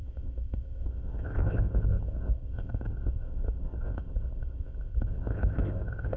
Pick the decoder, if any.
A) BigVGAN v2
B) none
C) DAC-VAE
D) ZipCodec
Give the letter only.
D